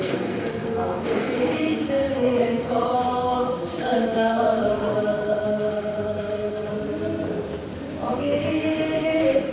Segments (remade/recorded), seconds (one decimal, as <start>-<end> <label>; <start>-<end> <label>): 0.0-6.7 remade; 6.7-8.1 recorded; 8.1-9.5 remade